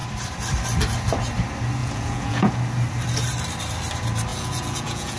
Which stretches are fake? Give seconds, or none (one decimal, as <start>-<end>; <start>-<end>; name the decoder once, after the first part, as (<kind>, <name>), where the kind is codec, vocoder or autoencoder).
1.8-2.5 (vocoder, Vocos); 4.3-5.2